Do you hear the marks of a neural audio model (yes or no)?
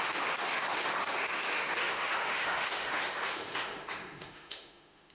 yes